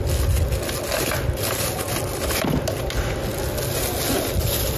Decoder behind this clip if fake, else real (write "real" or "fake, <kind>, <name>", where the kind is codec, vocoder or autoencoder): real